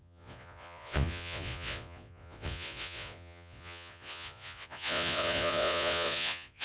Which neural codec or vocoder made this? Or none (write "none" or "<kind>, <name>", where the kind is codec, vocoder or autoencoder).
vocoder, Vocos